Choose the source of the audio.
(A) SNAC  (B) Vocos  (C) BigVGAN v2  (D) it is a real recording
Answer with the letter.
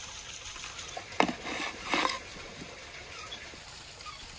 D